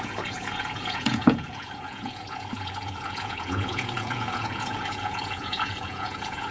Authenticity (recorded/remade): remade